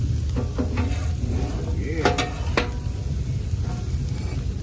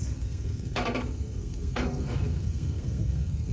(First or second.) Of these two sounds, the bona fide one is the first